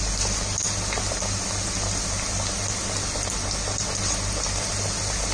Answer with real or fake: real